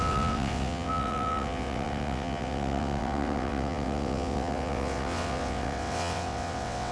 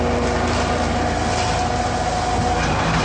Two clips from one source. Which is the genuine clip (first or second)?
second